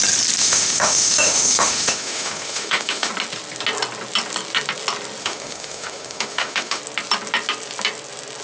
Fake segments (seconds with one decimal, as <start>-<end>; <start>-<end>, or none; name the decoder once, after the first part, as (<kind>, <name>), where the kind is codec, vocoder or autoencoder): 0.4-3.1 (autoencoder, DAC-VAE); 5.2-6.8